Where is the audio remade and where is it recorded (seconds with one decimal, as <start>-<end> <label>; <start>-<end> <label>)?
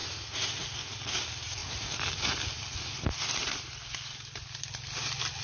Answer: 0.0-0.5 remade; 0.5-5.4 recorded